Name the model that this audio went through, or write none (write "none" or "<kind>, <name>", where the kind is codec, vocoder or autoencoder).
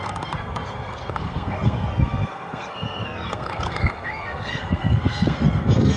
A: codec, SNAC